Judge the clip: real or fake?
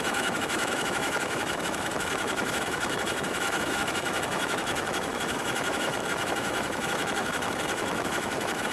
fake